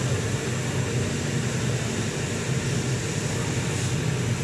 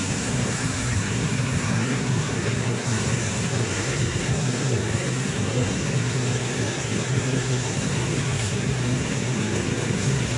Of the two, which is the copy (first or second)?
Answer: second